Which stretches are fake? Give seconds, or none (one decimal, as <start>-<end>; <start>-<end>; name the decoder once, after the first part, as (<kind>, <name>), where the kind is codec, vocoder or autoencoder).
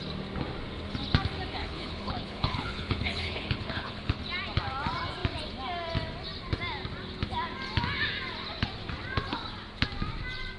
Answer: 1.6-4.2 (codec, HILCodec)